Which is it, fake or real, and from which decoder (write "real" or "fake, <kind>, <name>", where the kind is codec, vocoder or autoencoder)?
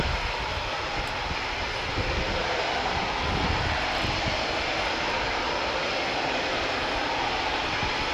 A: real